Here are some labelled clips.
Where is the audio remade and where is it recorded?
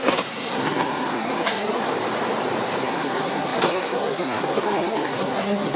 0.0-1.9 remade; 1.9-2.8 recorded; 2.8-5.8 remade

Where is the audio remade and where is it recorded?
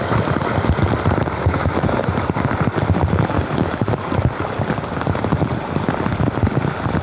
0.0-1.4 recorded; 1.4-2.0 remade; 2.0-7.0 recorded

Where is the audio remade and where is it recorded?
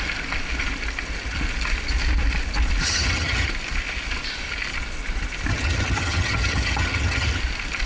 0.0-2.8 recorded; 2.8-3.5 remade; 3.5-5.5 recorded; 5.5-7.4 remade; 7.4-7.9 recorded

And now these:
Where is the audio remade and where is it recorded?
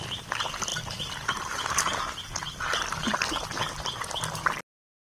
0.0-5.0 recorded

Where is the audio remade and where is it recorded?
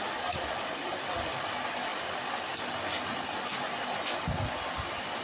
0.0-5.2 recorded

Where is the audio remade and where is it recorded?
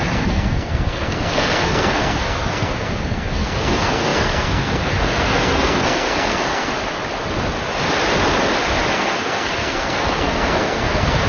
0.0-6.7 remade; 6.7-8.9 recorded; 8.9-11.3 remade